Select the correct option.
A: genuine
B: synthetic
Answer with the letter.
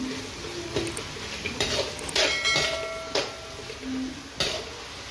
A